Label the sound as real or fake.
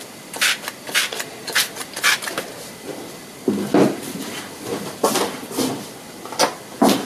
real